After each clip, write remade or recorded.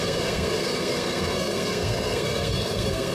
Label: remade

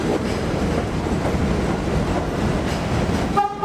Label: recorded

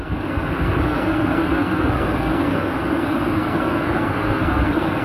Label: remade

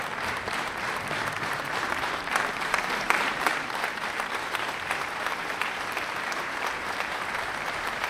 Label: remade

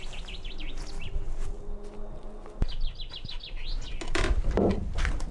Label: recorded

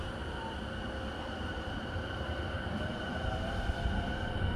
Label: remade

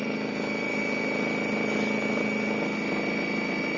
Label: recorded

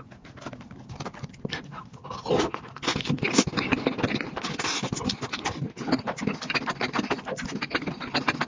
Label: recorded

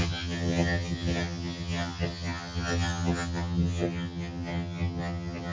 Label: remade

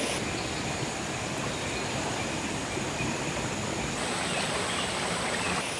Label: recorded